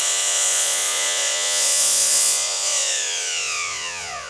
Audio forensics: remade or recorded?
remade